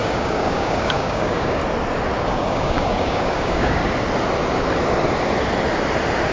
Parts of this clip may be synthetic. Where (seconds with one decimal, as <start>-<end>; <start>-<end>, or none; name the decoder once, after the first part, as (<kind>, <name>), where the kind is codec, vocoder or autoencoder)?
0.0-1.6 (codec, DAC); 2.2-3.8